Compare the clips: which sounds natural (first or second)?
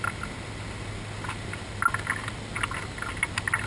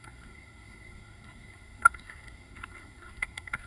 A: first